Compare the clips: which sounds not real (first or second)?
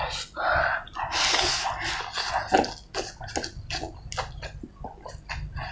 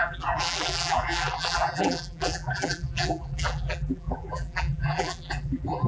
second